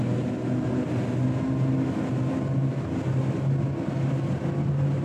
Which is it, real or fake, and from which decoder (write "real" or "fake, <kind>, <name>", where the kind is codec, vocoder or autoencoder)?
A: real